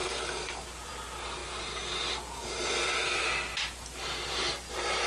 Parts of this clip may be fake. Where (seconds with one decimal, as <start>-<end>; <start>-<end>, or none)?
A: none